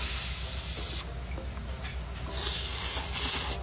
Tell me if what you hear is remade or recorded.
recorded